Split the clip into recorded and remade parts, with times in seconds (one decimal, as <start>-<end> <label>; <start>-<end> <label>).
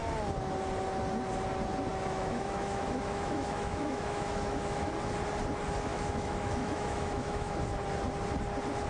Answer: 0.0-1.9 recorded; 1.9-4.9 remade; 4.9-5.9 recorded; 5.9-7.6 remade; 7.6-8.9 recorded